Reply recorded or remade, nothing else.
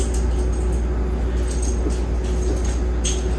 recorded